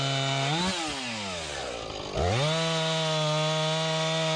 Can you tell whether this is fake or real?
real